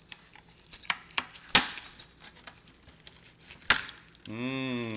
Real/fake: real